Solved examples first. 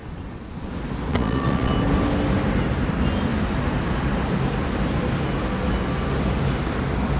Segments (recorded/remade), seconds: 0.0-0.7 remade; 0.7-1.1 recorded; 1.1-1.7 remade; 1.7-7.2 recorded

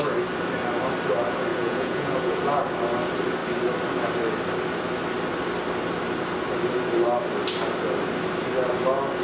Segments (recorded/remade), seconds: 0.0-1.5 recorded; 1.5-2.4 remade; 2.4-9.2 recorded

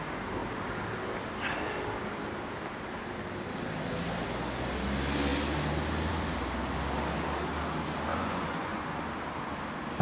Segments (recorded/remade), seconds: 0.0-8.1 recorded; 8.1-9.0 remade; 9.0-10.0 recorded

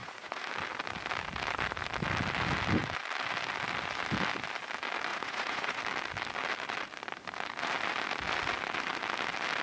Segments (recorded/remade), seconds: 0.0-0.5 remade; 0.5-5.1 recorded; 5.1-5.8 remade; 5.8-9.6 recorded